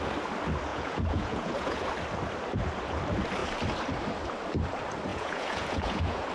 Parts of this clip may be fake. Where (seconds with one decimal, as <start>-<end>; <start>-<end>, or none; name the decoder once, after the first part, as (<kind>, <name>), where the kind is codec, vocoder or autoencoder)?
0.7-1.9 (vocoder, Vocos); 5.1-6.3